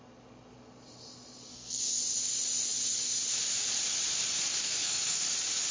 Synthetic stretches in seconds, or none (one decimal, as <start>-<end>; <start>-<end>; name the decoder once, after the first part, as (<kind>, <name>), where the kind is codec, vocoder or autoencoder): 1.5-2.0 (codec, SNAC); 4.6-5.2